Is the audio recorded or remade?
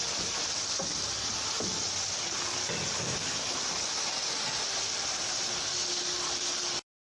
recorded